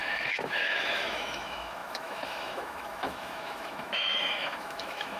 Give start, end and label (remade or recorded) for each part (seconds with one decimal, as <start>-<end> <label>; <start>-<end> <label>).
0.0-5.2 remade